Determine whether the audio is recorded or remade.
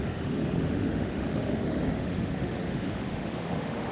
remade